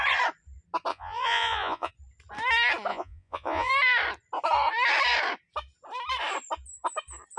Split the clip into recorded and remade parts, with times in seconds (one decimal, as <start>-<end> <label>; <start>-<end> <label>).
0.0-0.9 recorded; 0.9-1.9 remade; 1.9-2.9 recorded; 2.9-3.7 remade; 3.7-7.4 recorded